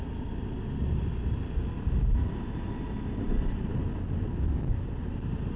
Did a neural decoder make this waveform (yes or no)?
no